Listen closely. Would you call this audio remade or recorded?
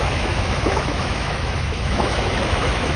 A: remade